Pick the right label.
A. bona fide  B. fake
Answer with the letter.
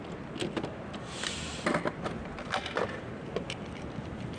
A